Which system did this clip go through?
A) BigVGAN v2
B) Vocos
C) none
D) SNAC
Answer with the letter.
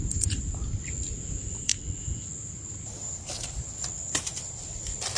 C